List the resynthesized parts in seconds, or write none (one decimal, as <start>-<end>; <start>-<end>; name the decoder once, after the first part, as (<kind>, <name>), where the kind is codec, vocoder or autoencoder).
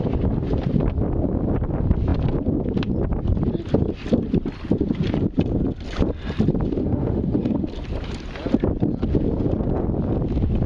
6.8-7.7 (autoencoder, DAC-VAE)